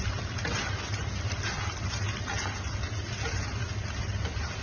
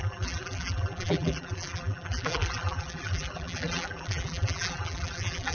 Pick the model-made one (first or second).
second